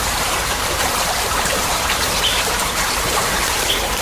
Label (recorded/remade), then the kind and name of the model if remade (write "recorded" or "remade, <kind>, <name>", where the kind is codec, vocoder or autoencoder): remade, vocoder, BigVGAN v2